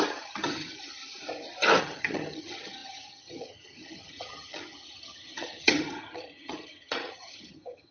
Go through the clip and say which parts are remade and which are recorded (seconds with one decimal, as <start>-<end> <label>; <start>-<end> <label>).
0.0-1.0 remade; 1.0-1.8 recorded; 1.8-7.9 remade